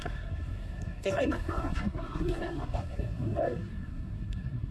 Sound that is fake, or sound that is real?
fake